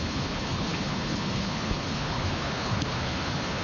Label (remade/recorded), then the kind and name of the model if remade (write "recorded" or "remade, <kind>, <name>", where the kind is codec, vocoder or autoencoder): remade, codec, HILCodec